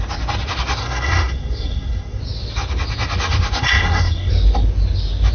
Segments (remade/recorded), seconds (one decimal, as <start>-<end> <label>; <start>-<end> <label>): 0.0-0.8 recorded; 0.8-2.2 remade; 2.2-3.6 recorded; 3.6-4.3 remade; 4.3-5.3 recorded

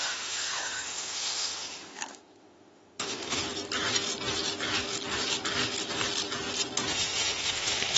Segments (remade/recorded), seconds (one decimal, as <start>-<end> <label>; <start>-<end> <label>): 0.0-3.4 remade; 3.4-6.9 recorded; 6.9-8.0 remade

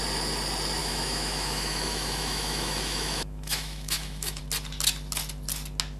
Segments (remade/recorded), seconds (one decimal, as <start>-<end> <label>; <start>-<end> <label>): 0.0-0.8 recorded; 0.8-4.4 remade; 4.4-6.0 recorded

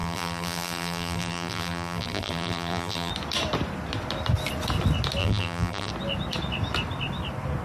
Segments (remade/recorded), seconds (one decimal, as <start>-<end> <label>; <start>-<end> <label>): 0.0-3.1 remade; 3.1-5.2 recorded; 5.2-5.9 remade; 5.9-7.6 recorded

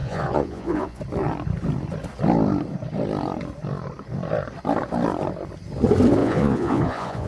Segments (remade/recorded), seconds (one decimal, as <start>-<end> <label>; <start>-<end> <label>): 0.0-1.0 remade; 1.0-6.2 recorded; 6.2-7.3 remade

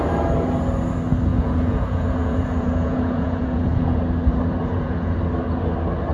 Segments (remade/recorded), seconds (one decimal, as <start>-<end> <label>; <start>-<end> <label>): 0.0-1.3 recorded; 1.3-4.0 remade; 4.0-4.6 recorded; 4.6-5.2 remade; 5.2-6.1 recorded